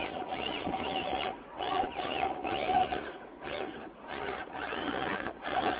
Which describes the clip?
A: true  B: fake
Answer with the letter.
B